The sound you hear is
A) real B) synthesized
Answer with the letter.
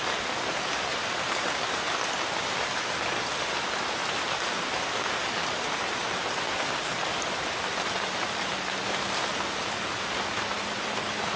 A